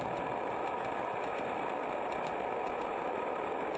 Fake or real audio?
real